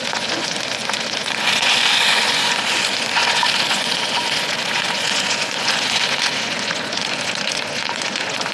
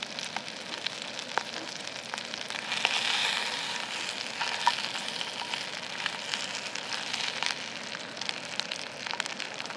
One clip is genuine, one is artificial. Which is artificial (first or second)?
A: first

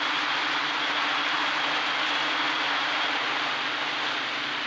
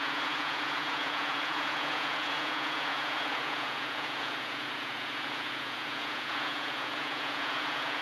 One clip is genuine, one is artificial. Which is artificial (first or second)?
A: second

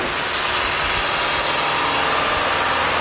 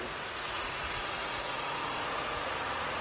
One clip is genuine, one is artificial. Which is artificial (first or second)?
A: second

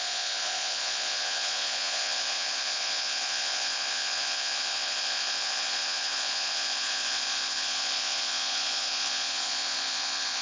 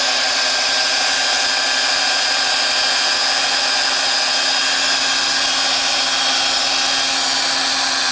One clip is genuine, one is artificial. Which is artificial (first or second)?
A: first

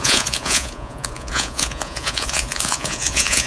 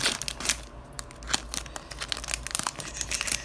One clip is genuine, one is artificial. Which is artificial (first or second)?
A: first